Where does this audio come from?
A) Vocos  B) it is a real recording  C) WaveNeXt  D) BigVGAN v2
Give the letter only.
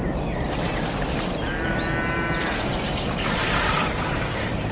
D